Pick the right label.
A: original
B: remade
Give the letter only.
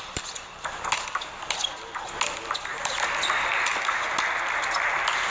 A